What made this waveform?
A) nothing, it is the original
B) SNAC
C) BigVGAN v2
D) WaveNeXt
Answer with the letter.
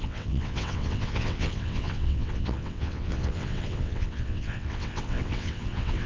D